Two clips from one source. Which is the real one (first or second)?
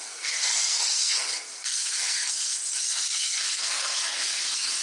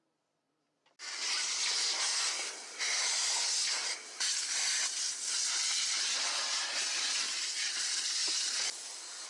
second